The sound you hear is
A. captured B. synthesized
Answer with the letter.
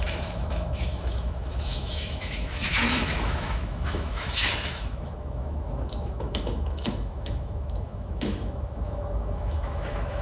B